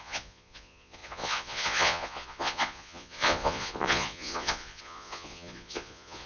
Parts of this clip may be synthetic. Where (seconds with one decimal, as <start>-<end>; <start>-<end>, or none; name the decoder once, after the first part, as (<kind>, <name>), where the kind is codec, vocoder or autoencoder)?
0.0-6.3 (vocoder, Vocos)